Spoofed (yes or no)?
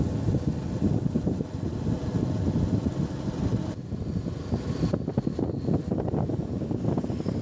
no